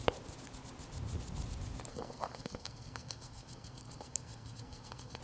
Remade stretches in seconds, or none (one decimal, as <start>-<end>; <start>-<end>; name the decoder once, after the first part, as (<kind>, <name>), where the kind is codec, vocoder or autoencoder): 1.9-5.2 (codec, SNAC)